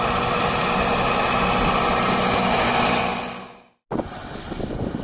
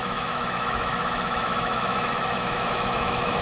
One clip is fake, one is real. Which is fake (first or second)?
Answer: second